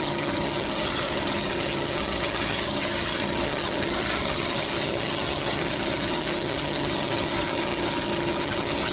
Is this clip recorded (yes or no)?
no